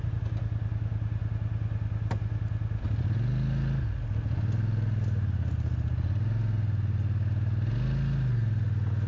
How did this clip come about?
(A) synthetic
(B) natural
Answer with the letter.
B